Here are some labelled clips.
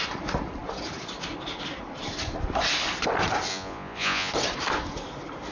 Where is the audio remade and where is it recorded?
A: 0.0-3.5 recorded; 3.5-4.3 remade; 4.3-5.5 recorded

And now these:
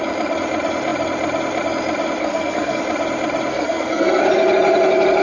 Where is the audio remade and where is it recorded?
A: 0.0-2.2 recorded; 2.2-2.8 remade; 2.8-3.5 recorded; 3.5-4.2 remade; 4.2-5.2 recorded

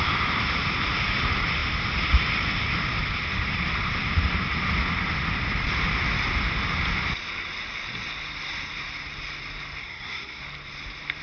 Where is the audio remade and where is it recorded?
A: 0.0-9.8 recorded; 9.8-10.4 remade; 10.4-11.2 recorded

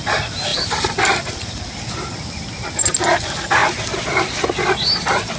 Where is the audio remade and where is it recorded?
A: 0.0-0.5 recorded; 0.5-1.8 remade; 1.8-3.6 recorded; 3.6-4.3 remade; 4.3-5.4 recorded

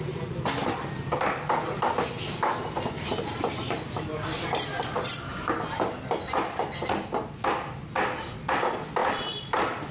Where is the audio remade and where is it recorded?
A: 0.0-9.9 recorded

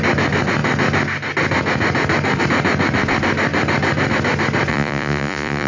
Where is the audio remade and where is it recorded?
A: 0.0-4.7 recorded; 4.7-5.7 remade